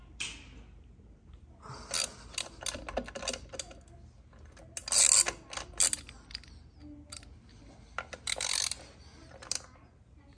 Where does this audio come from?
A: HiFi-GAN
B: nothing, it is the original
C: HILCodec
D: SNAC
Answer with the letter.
B